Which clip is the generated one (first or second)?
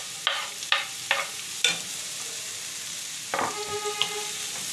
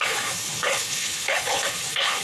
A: second